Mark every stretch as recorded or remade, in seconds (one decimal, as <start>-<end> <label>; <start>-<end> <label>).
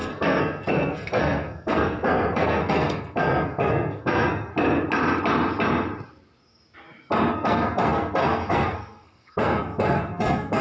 0.0-4.5 remade; 4.5-7.3 recorded; 7.3-10.6 remade